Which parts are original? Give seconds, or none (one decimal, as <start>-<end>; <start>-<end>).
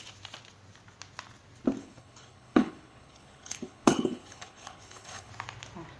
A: 0.0-1.8; 5.3-6.0